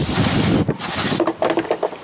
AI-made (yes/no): no